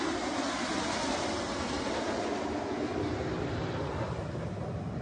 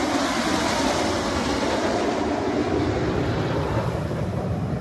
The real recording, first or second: first